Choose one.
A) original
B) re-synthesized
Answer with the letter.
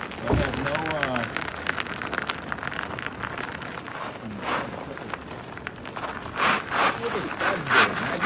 A